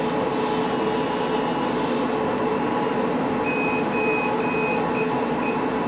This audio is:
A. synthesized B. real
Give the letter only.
B